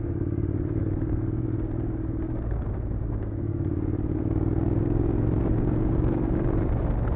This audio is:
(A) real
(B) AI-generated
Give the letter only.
B